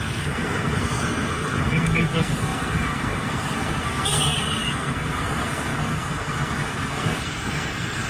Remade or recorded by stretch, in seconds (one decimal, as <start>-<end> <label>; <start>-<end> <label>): 0.0-8.1 remade